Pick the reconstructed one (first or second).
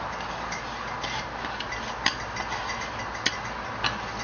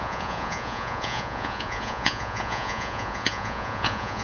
second